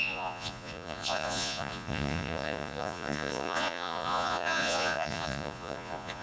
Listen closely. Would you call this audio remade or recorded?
remade